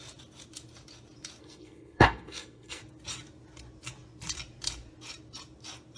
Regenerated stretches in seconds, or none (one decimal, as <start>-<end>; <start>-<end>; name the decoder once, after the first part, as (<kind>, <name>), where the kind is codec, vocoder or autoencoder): 1.4-2.8 (codec, SNAC)